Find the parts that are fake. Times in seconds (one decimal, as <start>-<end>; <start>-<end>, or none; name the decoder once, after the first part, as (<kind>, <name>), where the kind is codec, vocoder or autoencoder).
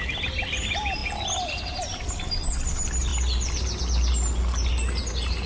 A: none